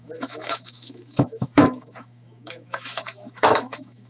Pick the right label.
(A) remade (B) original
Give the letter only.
A